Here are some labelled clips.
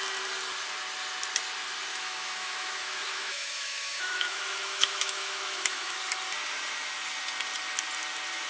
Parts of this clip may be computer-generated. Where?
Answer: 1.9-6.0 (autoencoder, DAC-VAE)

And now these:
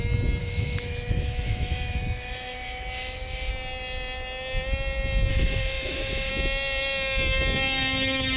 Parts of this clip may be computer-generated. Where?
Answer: 0.4-3.5 (autoencoder, DAC-VAE); 5.3-6.3

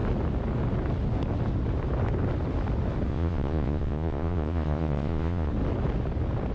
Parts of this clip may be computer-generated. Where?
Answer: 3.1-5.5 (vocoder, Vocos)

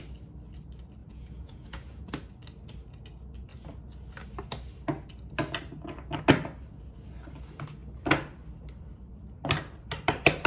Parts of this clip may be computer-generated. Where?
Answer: 1.0-2.1 (vocoder, Vocos)

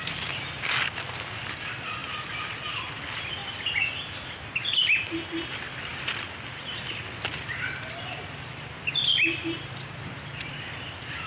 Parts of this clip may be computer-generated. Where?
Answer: 5.9-6.6 (vocoder, BigVGAN v2)